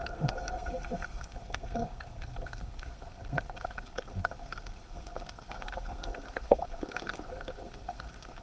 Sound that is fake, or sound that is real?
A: fake